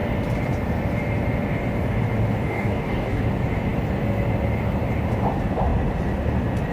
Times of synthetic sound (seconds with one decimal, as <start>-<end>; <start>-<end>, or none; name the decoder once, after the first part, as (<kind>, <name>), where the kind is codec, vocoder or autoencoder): 2.5-3.2 (codec, DAC)